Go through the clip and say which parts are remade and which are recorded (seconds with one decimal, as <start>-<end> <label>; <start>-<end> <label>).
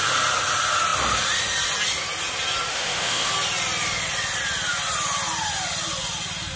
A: 0.0-2.7 recorded; 2.7-3.3 remade; 3.3-6.6 recorded